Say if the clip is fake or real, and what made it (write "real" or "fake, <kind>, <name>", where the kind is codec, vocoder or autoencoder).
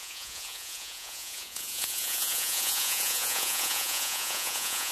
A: fake, vocoder, Vocos